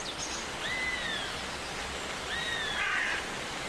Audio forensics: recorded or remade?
recorded